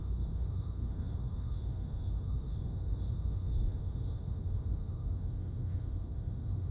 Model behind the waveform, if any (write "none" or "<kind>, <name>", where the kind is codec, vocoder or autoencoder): autoencoder, DAC-VAE